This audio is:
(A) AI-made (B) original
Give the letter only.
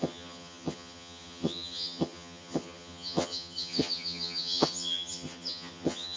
A